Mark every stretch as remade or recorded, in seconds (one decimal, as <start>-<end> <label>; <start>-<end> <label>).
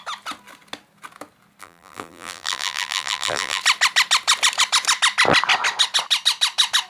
0.0-1.6 recorded; 1.6-3.6 remade; 3.6-6.9 recorded